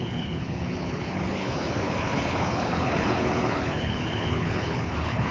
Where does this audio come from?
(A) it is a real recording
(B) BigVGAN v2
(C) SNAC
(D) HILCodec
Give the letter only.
D